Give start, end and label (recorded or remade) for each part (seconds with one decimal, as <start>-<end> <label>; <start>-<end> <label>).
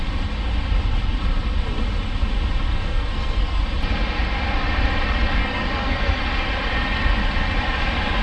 0.0-2.7 recorded; 2.7-3.6 remade; 3.6-5.4 recorded; 5.4-6.2 remade; 6.2-8.2 recorded